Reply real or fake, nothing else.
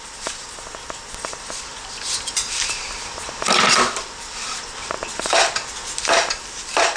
fake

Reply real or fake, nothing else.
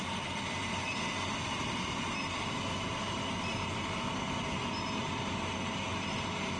real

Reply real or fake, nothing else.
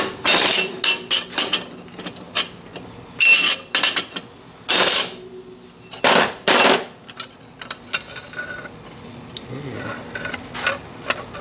real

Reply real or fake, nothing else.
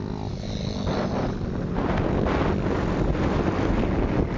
real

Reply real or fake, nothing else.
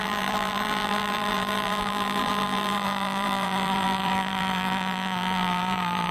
fake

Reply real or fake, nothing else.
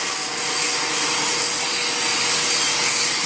real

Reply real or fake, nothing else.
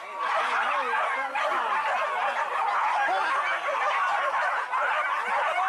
real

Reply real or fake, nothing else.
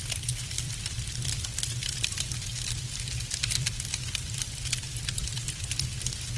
fake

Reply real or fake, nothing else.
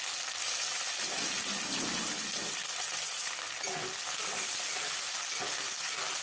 fake